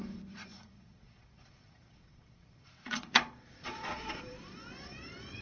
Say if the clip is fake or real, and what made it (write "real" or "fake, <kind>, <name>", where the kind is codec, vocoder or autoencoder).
fake, vocoder, Vocos